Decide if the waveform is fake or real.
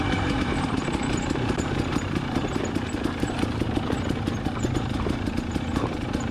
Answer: fake